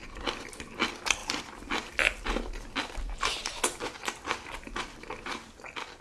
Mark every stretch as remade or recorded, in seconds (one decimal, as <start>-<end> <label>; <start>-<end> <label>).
0.0-1.2 recorded; 1.2-2.5 remade; 2.5-3.4 recorded; 3.4-4.0 remade; 4.0-6.0 recorded

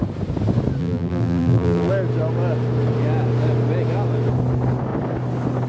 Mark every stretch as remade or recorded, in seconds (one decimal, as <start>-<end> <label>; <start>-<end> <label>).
0.0-0.8 recorded; 0.8-1.9 remade; 1.9-5.7 recorded